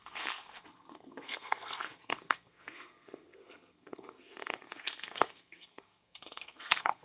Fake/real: fake